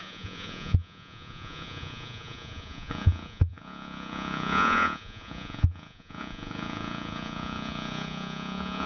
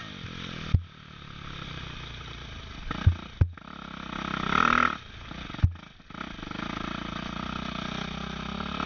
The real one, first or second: second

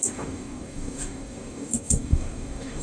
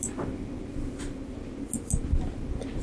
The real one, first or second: second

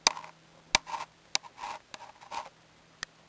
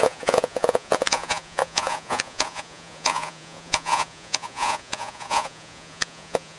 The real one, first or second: first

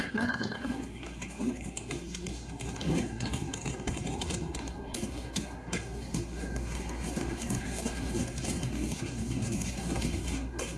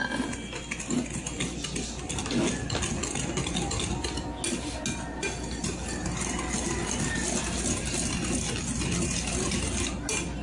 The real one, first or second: second